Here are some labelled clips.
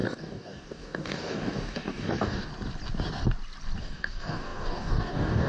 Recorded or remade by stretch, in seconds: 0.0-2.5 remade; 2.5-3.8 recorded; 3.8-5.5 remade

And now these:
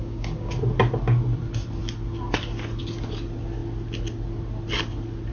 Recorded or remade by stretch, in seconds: 0.0-0.5 remade; 0.5-5.3 recorded